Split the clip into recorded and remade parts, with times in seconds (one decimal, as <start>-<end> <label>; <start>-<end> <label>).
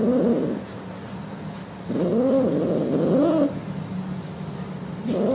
0.0-5.3 recorded